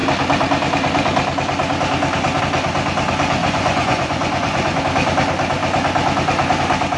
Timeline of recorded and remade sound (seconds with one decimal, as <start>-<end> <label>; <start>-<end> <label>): 0.0-3.4 recorded; 3.4-4.8 remade; 4.8-7.0 recorded